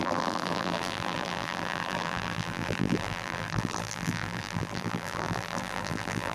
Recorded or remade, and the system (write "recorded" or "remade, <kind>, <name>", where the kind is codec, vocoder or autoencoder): remade, vocoder, BigVGAN v2